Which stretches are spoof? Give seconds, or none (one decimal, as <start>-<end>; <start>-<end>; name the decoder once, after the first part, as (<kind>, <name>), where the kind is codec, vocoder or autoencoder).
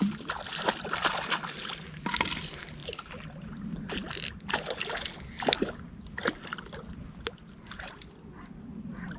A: none